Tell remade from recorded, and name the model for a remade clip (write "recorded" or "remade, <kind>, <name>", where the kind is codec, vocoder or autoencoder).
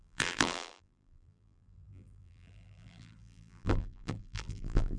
remade, vocoder, BigVGAN v2